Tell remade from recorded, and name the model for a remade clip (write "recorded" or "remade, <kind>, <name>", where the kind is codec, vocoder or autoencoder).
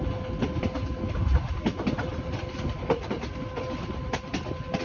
recorded